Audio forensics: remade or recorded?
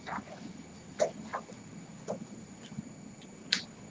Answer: recorded